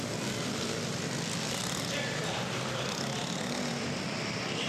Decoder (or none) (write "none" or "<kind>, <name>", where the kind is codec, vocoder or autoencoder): vocoder, BigVGAN v2